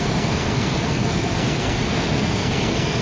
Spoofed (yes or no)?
yes